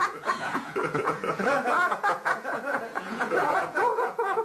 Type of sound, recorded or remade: remade